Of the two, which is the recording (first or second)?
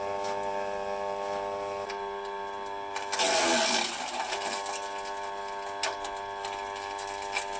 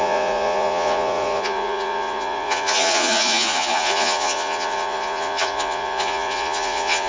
first